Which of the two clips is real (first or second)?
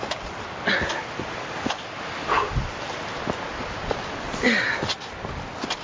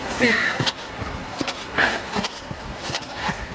first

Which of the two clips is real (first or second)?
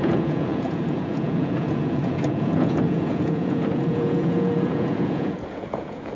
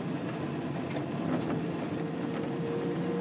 second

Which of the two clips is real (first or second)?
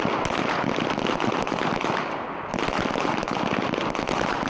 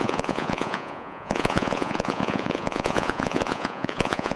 first